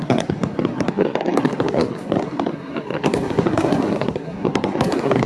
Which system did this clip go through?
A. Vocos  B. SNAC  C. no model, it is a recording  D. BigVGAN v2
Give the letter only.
B